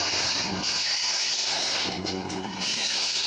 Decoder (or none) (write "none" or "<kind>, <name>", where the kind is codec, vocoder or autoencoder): codec, SNAC